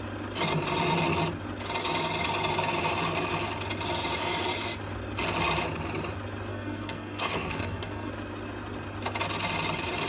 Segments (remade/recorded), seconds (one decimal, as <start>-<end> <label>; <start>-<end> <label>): 0.0-6.5 recorded; 6.5-8.1 remade; 8.1-10.1 recorded